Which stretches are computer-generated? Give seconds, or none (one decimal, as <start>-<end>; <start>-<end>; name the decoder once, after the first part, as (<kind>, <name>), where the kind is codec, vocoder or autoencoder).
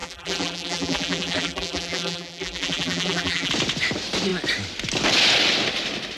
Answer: 0.0-3.5 (vocoder, BigVGAN v2)